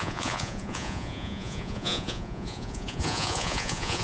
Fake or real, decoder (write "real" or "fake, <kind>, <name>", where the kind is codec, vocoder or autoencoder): fake, vocoder, Vocos